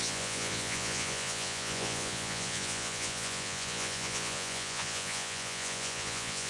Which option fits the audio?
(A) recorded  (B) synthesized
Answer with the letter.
B